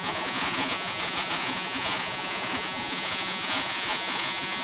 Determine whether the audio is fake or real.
fake